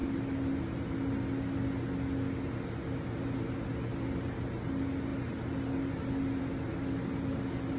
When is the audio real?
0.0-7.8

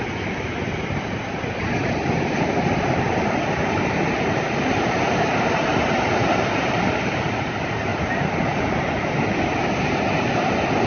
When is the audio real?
0.0-6.2; 7.2-7.9; 8.9-10.9

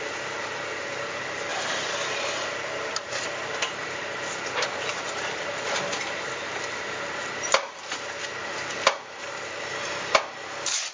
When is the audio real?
0.0-4.9; 7.2-10.9

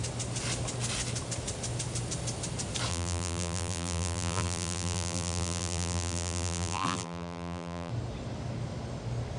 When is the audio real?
0.0-2.9; 7.9-9.4

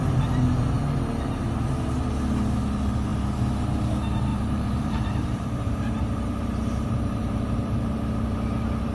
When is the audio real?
0.0-4.3; 8.1-8.9

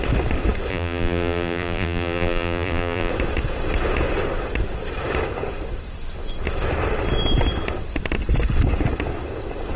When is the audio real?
0.0-0.7; 3.1-9.8

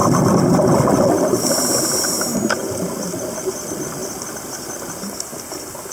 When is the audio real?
0.6-2.3; 3.6-5.9

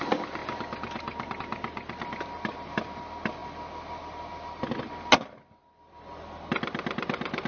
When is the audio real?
0.0-7.5